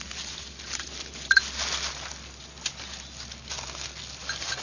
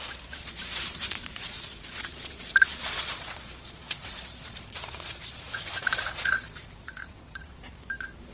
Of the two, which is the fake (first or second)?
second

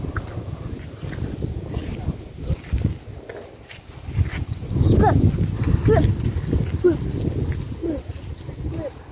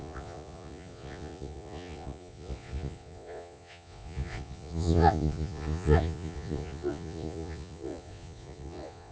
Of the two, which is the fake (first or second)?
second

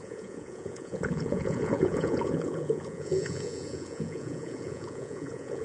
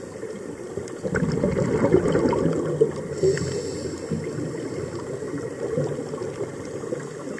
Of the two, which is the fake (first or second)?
first